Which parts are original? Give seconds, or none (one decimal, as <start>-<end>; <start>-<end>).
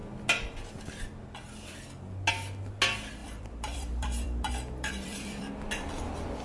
0.0-3.2; 5.5-6.4